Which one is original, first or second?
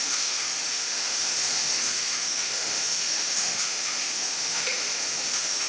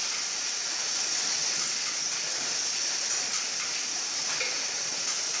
second